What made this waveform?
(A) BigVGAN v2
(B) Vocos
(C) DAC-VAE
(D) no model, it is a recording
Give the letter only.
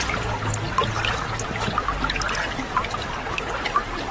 D